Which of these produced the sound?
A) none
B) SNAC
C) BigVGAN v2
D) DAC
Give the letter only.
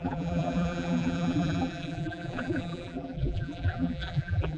C